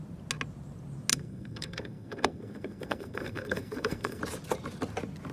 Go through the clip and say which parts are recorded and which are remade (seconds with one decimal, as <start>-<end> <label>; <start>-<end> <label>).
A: 0.0-1.1 recorded; 1.1-4.2 remade; 4.2-5.3 recorded